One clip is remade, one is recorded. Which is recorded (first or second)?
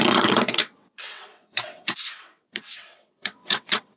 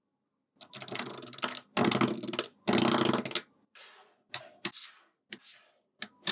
second